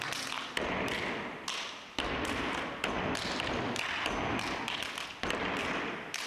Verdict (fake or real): real